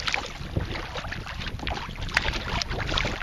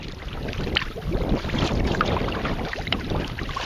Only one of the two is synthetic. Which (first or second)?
second